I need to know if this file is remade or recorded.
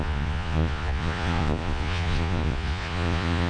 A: remade